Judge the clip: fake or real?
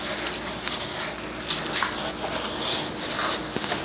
real